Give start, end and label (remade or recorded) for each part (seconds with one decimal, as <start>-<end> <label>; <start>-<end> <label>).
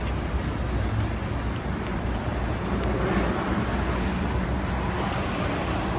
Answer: 0.0-6.0 recorded